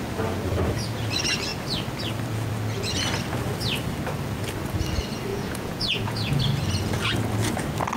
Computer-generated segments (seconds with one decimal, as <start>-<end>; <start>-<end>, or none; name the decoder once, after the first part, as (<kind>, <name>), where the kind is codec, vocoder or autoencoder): 5.3-6.4 (vocoder, Vocos)